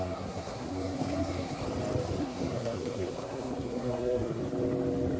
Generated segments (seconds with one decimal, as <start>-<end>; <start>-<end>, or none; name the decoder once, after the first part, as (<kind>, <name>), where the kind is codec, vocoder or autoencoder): 0.0-1.6 (codec, SNAC); 2.2-4.4